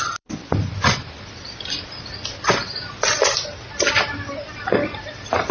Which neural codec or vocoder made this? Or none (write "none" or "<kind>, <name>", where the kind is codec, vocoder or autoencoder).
vocoder, BigVGAN v2